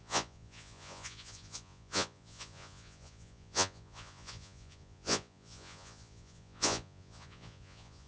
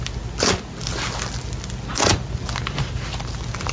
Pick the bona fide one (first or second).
second